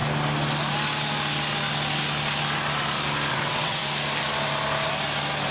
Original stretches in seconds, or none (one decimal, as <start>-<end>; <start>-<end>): 0.0-3.3; 3.8-5.5